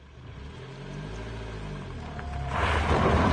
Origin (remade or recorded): recorded